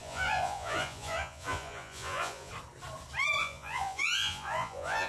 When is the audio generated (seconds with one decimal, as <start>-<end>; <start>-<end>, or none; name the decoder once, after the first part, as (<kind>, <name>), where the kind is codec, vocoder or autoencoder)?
0.0-2.5 (vocoder, Vocos); 3.4-5.1